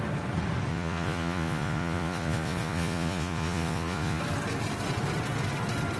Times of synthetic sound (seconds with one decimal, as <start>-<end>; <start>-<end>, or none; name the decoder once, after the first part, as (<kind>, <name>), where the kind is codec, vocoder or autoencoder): 0.7-4.2 (vocoder, Vocos)